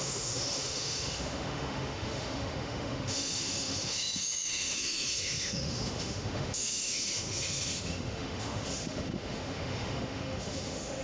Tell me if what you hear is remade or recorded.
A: remade